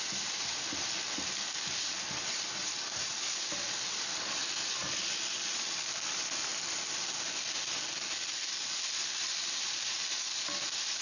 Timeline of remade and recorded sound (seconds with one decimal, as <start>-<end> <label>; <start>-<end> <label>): 0.0-6.5 remade; 6.5-8.9 recorded; 8.9-11.0 remade